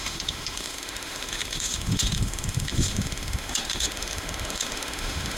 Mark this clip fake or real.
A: fake